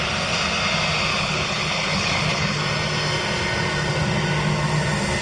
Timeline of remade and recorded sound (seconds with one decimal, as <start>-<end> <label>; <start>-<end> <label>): 0.0-1.1 recorded; 1.1-2.6 remade; 2.6-5.2 recorded